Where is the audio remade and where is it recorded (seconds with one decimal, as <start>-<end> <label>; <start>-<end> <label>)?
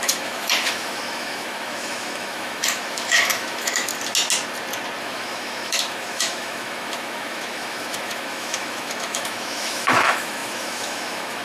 0.0-3.9 remade; 3.9-5.0 recorded; 5.0-11.4 remade